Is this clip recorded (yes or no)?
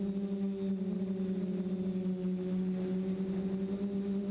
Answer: yes